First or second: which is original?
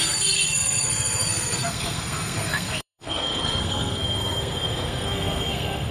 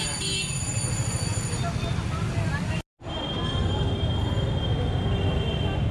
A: second